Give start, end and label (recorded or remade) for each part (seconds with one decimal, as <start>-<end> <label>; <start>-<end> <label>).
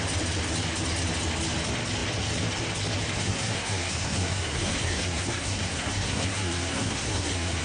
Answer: 0.0-3.2 recorded; 3.2-7.6 remade